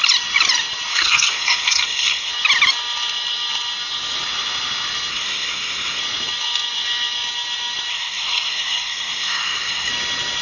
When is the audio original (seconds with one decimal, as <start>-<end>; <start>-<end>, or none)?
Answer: 0.0-0.9; 2.3-5.1; 6.0-7.9; 9.9-10.4